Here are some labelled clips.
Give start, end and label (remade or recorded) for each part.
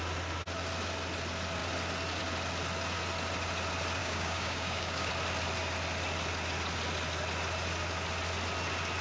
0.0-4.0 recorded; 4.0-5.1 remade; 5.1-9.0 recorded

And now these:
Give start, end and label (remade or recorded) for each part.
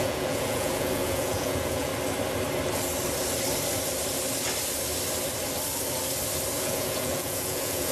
0.0-1.9 remade; 1.9-6.6 recorded; 6.6-7.9 remade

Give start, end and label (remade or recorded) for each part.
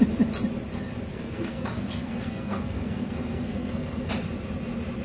0.0-1.1 recorded; 1.1-4.1 remade; 4.1-5.0 recorded